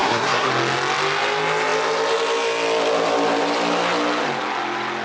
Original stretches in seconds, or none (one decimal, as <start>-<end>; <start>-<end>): 0.5-5.0